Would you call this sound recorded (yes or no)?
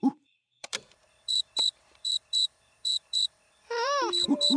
no